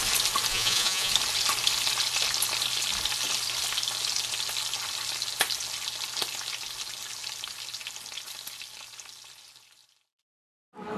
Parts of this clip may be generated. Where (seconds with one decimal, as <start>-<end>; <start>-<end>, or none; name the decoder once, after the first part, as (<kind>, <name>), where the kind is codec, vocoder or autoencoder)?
0.5-1.1 (vocoder, Vocos)

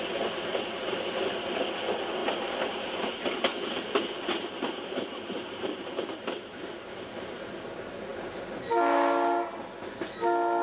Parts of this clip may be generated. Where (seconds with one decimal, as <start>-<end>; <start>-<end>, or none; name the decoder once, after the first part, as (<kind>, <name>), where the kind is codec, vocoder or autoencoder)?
2.2-7.0 (vocoder, BigVGAN v2)

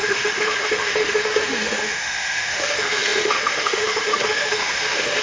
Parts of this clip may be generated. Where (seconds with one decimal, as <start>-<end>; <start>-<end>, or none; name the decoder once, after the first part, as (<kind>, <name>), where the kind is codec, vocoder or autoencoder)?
0.0-5.2 (autoencoder, DAC-VAE)

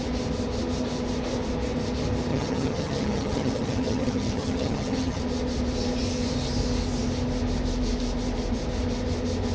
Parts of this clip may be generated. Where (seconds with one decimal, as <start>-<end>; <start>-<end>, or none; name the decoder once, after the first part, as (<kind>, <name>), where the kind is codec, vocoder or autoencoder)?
2.3-5.2 (vocoder, HiFi-GAN)

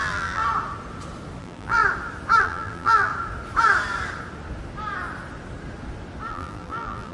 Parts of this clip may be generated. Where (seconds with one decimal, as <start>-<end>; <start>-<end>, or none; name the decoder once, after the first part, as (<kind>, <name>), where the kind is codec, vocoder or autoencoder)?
0.0-0.4 (vocoder, BigVGAN v2); 1.4-1.8; 2.4-3.1; 6.3-7.1